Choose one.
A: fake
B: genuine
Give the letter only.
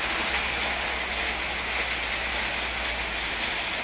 B